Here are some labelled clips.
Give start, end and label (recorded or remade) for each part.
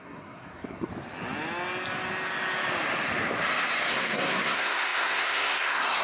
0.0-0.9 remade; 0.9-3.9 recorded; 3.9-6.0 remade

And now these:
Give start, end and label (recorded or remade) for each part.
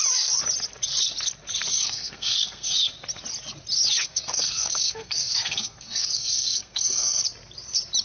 0.0-1.7 recorded; 1.7-2.7 remade; 2.7-4.0 recorded; 4.0-7.2 remade; 7.2-8.0 recorded